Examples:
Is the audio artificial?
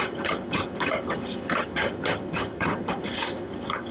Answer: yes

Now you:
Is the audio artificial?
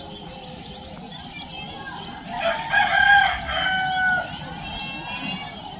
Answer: no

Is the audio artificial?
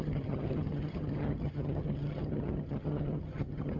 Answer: yes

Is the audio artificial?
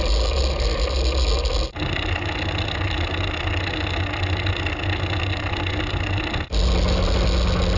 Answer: no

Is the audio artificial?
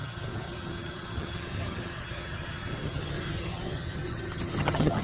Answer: yes